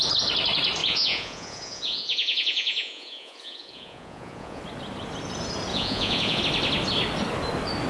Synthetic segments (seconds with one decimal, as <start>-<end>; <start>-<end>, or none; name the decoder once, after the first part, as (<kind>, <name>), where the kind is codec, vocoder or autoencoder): 0.8-4.6 (vocoder, Vocos); 5.7-6.4